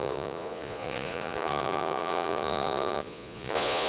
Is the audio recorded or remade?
remade